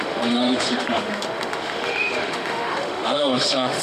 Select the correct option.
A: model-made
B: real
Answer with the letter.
A